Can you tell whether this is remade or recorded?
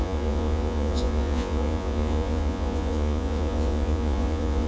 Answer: remade